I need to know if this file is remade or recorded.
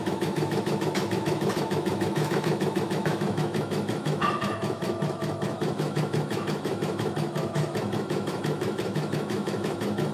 remade